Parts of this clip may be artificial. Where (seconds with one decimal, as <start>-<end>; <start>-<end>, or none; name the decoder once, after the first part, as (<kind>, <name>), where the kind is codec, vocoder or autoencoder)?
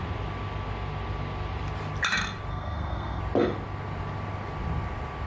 2.5-3.2 (codec, SNAC)